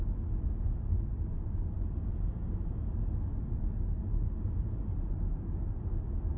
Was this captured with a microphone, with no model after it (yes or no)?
yes